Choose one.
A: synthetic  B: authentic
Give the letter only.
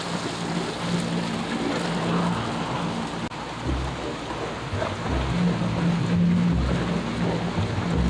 B